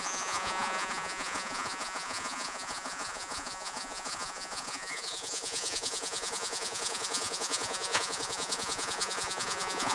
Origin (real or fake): fake